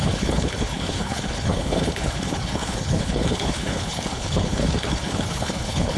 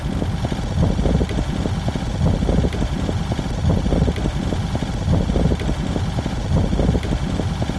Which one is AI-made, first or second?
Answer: first